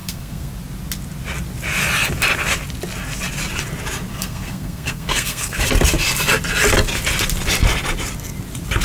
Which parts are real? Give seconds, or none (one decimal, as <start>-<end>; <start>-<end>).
0.5-4.1; 5.6-8.8